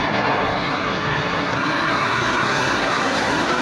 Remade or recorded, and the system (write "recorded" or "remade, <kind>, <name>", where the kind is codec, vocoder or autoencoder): remade, codec, SNAC